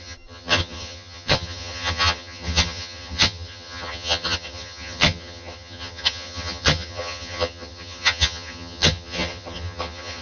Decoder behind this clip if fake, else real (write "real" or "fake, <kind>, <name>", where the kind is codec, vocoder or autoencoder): fake, vocoder, HiFi-GAN